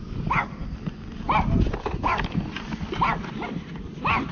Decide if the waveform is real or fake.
fake